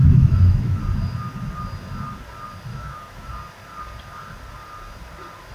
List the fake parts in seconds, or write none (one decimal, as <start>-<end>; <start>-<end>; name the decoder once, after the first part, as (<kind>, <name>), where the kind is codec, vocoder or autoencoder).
0.0-0.8 (autoencoder, DAC-VAE); 2.7-3.3